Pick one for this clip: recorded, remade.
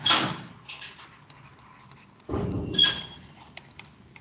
recorded